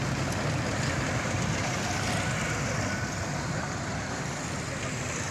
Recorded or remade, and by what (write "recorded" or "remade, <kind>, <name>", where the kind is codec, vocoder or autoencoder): recorded